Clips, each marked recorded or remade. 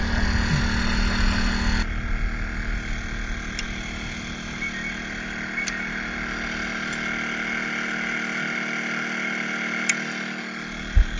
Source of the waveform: recorded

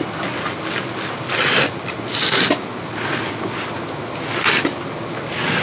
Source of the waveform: recorded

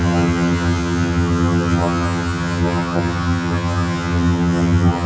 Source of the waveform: remade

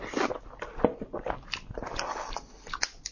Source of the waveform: recorded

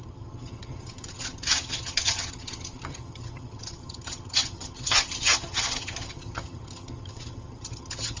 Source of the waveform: remade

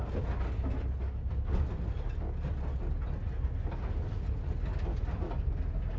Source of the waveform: recorded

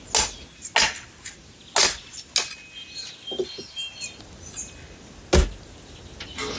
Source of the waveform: recorded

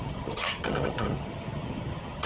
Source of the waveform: remade